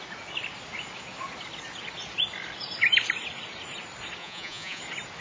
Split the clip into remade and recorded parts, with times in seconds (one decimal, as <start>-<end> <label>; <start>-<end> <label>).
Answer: 0.0-4.2 recorded; 4.2-4.8 remade; 4.8-5.2 recorded